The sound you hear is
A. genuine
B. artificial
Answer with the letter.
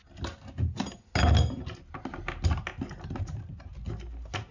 A